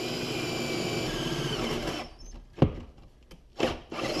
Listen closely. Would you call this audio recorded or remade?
recorded